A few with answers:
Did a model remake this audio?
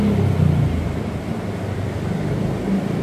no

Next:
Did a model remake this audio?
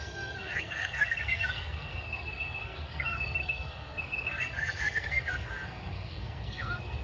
yes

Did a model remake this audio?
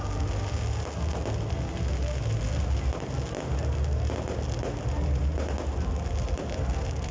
no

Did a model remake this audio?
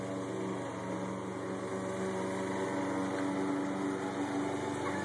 no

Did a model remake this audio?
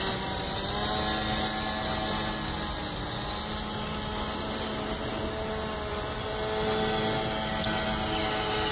no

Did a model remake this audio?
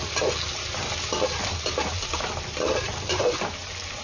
no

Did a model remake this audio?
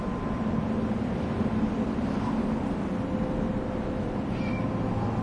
no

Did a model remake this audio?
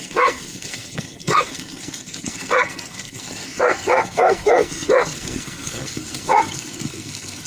yes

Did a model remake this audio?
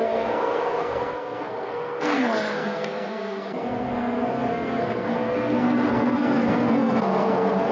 yes